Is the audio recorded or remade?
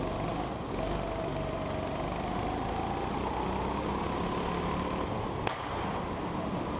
recorded